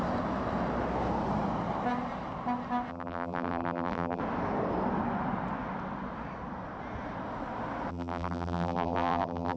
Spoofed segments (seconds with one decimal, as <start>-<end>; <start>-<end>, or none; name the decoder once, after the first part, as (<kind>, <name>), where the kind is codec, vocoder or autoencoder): 2.9-4.2 (vocoder, BigVGAN v2); 7.9-9.6